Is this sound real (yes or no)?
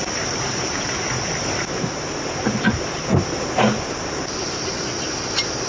yes